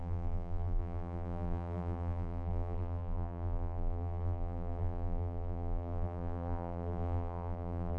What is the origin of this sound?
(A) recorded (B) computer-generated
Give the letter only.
B